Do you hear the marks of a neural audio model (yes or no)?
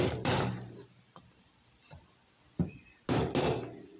no